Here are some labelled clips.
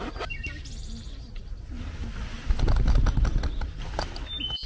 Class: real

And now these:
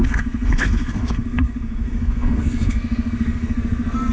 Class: fake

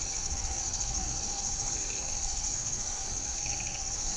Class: fake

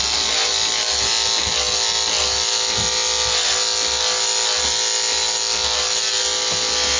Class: real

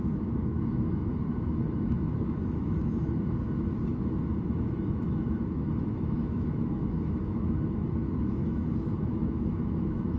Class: fake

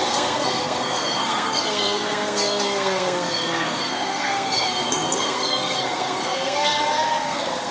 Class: fake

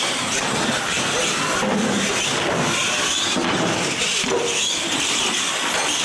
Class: real